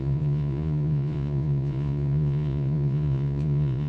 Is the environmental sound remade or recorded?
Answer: remade